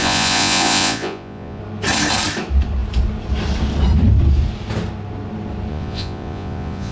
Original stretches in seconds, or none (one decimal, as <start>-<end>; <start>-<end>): 1.6-5.7